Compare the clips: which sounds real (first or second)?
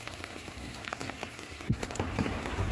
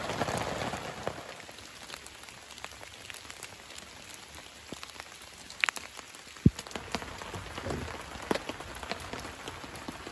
second